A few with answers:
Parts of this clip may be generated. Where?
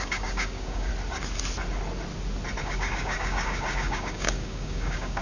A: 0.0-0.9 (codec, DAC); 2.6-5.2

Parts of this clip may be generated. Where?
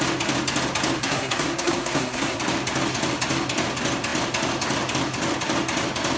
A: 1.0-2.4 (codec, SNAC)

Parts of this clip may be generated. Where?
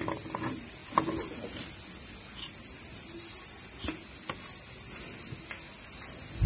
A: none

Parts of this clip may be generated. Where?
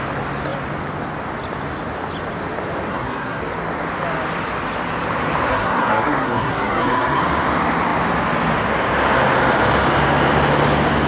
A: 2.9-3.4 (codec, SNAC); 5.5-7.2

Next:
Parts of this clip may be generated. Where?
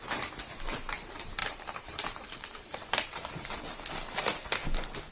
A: 1.4-3.6 (vocoder, BigVGAN v2)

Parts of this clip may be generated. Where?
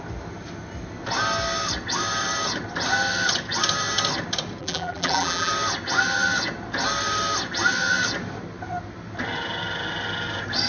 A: 4.6-5.5 (vocoder, BigVGAN v2)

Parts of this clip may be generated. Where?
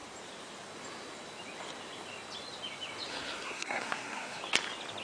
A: 3.1-4.4 (codec, SNAC)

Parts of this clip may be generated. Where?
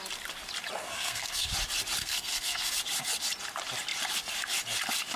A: 0.8-1.5 (codec, SNAC); 2.0-2.7